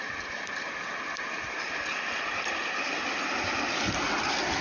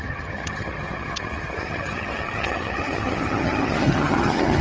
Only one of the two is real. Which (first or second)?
first